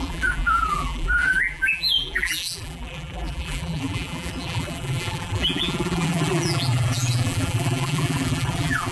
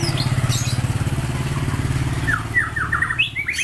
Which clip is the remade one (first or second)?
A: first